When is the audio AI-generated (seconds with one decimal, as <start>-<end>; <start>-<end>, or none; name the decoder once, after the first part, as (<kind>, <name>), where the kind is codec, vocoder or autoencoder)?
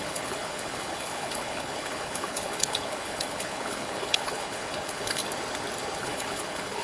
0.0-5.2 (codec, HILCodec); 6.0-6.8